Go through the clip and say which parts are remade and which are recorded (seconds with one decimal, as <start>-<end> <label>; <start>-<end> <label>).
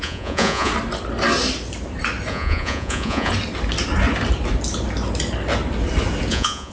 0.0-0.7 remade; 0.7-2.3 recorded; 2.3-3.3 remade; 3.3-6.3 recorded; 6.3-6.7 remade